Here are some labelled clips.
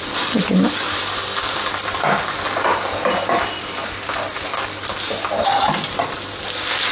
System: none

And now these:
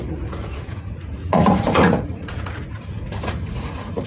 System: vocoder, Vocos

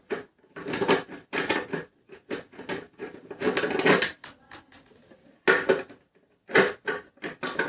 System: none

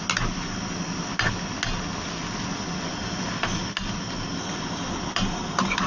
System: none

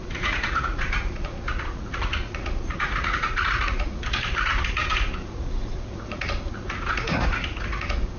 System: vocoder, Vocos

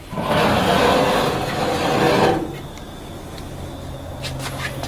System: none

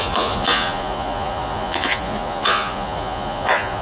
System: vocoder, Vocos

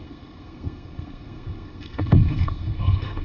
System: codec, SNAC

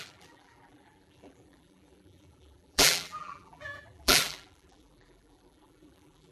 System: vocoder, BigVGAN v2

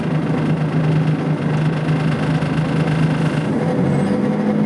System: none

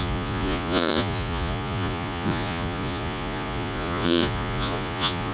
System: vocoder, Vocos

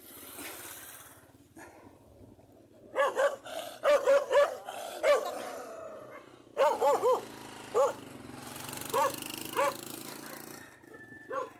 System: none